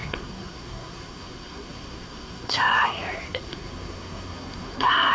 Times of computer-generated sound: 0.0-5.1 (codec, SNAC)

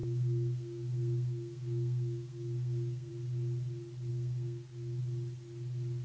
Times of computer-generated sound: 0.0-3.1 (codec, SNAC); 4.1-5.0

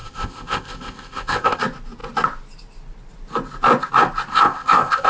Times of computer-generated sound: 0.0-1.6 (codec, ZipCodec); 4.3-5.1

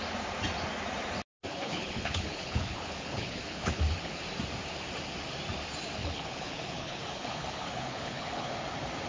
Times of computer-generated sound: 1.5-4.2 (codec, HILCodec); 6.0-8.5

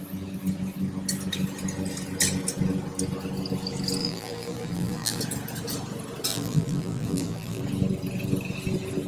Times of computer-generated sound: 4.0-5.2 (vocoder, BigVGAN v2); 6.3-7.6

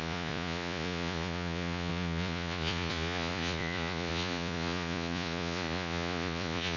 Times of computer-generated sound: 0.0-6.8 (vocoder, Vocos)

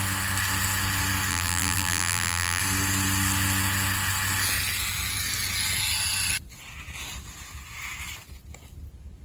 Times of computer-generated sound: 1.3-2.6 (vocoder, BigVGAN v2)